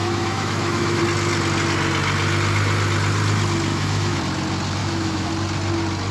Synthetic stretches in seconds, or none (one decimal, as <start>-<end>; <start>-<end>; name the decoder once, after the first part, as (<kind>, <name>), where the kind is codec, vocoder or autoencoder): 0.0-1.0 (autoencoder, DAC-VAE); 3.7-4.2; 4.8-5.3